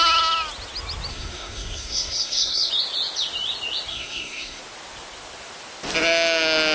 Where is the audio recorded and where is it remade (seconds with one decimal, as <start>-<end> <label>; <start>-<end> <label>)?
0.0-1.1 recorded; 1.1-2.7 remade; 2.7-3.9 recorded; 3.9-4.6 remade; 4.6-6.7 recorded